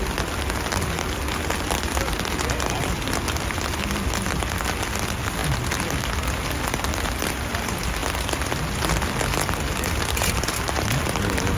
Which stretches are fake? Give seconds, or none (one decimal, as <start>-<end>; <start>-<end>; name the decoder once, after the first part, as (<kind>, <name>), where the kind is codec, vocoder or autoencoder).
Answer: none